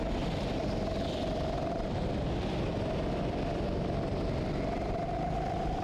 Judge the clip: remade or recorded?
remade